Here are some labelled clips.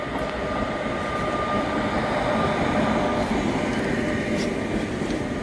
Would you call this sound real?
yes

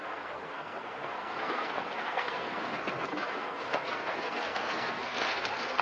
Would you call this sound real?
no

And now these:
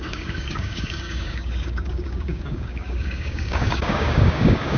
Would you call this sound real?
no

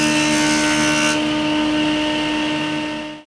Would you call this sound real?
yes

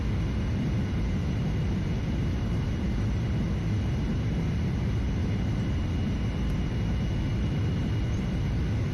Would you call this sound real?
no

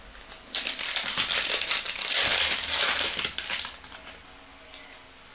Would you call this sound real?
yes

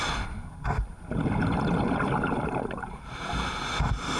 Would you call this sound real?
yes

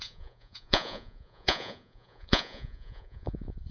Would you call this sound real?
no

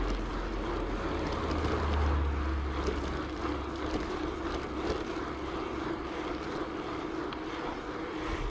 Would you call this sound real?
yes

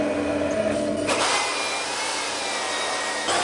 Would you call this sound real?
yes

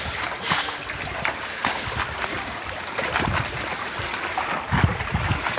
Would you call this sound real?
yes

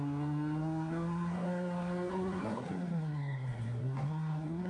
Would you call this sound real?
no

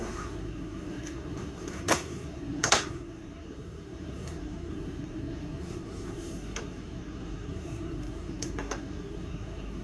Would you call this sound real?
no